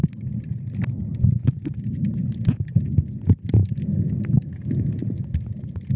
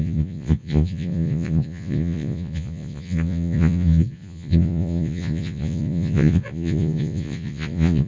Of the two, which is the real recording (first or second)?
first